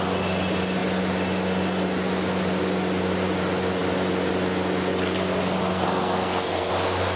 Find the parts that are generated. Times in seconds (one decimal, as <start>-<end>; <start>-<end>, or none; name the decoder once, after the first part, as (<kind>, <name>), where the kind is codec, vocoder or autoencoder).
5.7-6.7 (codec, SNAC)